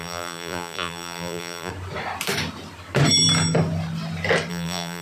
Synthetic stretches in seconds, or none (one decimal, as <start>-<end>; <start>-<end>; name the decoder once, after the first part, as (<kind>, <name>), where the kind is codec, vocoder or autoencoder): 0.0-1.7 (vocoder, BigVGAN v2); 4.5-5.0